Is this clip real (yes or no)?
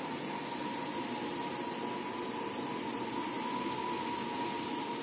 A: yes